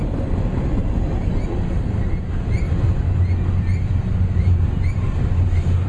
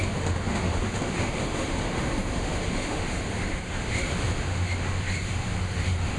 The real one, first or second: first